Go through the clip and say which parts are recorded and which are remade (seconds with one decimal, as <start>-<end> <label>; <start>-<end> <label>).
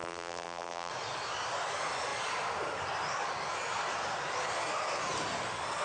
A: 0.0-0.9 remade; 0.9-5.8 recorded